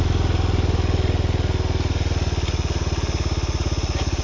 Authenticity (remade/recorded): recorded